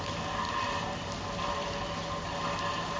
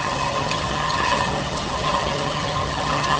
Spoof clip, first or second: second